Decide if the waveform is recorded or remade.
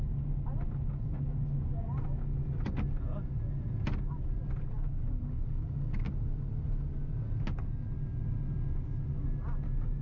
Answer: recorded